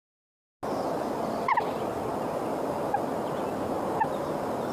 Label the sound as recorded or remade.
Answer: recorded